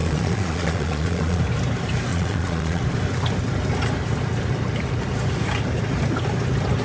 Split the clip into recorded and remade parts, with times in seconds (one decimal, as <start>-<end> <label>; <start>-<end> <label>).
0.0-1.4 remade; 1.4-2.1 recorded; 2.1-2.8 remade; 2.8-6.8 recorded